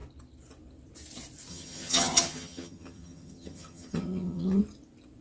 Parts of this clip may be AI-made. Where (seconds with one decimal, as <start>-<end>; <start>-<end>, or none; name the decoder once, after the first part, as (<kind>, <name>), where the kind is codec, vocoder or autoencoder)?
1.5-4.6 (vocoder, HiFi-GAN)